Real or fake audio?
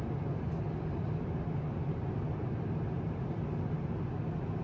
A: real